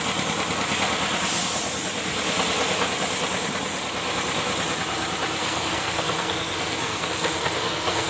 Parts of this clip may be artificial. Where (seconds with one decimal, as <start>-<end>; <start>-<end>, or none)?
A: 5.4-8.1